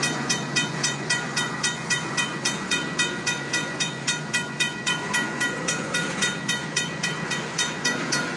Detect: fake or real fake